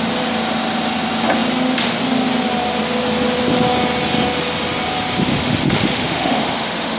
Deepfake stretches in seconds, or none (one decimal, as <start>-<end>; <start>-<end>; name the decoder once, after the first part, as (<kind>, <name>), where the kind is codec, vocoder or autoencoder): 5.3-7.0 (autoencoder, DAC-VAE)